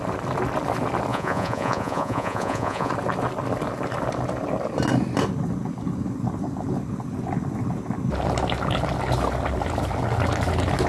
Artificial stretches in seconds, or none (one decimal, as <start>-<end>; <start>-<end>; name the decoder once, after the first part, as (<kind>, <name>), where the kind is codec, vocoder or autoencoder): 1.1-2.9 (vocoder, Vocos)